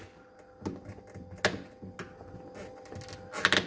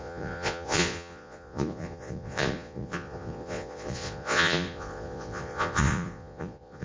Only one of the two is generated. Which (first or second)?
second